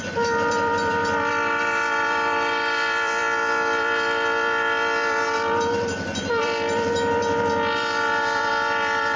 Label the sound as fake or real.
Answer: fake